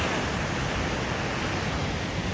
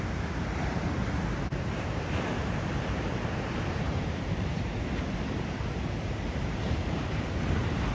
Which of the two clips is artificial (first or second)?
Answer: second